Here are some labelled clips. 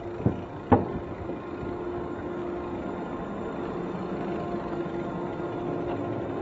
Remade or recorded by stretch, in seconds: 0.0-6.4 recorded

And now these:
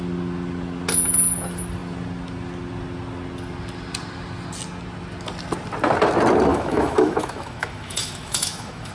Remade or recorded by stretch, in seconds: 0.0-6.5 recorded; 6.5-8.9 remade